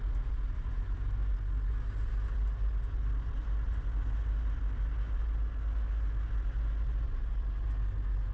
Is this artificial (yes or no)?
no